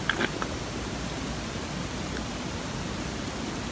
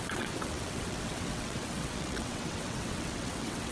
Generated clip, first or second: second